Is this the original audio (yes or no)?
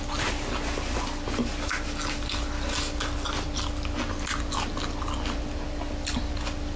yes